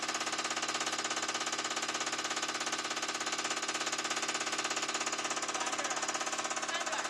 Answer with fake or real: real